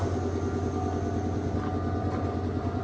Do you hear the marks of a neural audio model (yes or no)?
no